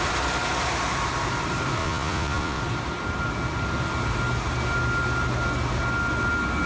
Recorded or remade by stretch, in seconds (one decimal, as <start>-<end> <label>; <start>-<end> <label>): 0.0-1.8 recorded; 1.8-2.6 remade; 2.6-6.7 recorded